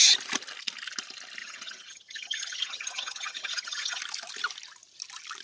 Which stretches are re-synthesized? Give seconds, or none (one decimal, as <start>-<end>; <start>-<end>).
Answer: 1.4-4.0